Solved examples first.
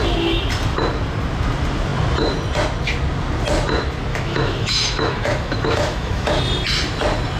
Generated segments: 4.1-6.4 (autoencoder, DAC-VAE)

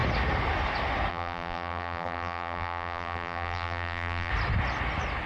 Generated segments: 1.1-4.3 (vocoder, BigVGAN v2)